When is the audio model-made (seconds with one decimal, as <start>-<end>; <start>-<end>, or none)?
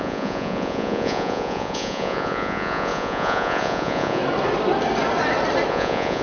0.0-4.2; 5.7-6.2